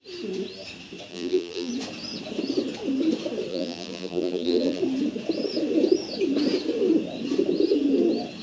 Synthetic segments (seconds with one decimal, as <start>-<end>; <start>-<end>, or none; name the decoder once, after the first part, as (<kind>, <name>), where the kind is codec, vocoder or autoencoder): 1.1-1.7 (vocoder, BigVGAN v2); 3.5-4.8